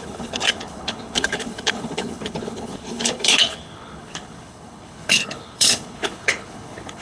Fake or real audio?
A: fake